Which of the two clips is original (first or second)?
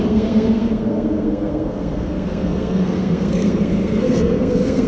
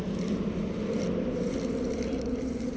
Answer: second